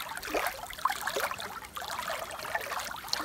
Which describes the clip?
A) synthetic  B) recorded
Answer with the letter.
B